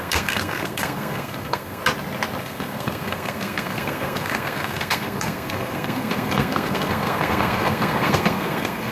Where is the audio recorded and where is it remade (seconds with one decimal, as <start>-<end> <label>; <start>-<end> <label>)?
0.0-1.8 remade; 1.8-2.4 recorded; 2.4-8.9 remade